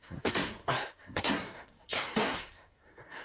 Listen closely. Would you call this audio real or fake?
fake